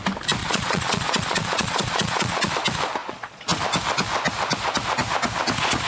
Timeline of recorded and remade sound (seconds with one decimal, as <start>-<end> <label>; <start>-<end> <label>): 0.0-0.4 recorded; 0.4-2.5 remade; 2.5-3.0 recorded; 3.0-3.6 remade; 3.6-5.9 recorded